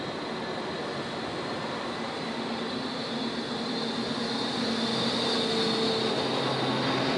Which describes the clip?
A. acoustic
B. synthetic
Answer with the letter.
A